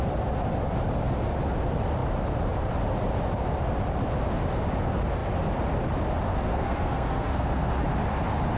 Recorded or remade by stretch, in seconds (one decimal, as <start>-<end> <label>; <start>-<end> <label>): 0.0-6.3 recorded; 6.3-7.7 remade; 7.7-8.6 recorded